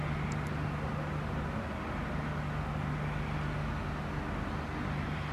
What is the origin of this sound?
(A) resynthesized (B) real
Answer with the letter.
B